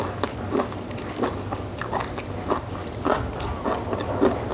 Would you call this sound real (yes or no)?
yes